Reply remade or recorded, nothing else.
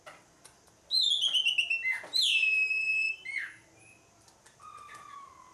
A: recorded